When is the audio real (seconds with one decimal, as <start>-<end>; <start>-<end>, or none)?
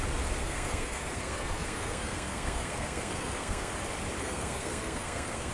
0.0-0.4; 3.7-4.2